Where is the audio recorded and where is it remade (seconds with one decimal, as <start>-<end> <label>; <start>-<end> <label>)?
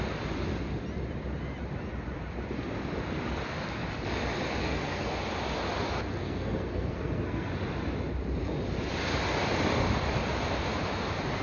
0.0-4.6 recorded; 4.6-5.1 remade; 5.1-6.2 recorded; 6.2-7.5 remade; 7.5-11.4 recorded